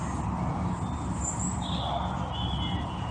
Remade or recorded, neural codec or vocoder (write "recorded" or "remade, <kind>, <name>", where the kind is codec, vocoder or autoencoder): recorded